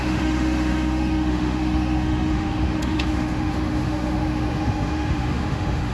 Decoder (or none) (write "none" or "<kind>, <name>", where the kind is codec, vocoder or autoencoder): autoencoder, DAC-VAE